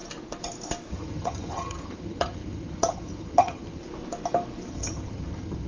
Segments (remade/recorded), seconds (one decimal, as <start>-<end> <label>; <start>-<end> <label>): 0.0-0.9 recorded; 0.9-3.8 remade; 3.8-4.7 recorded; 4.7-5.7 remade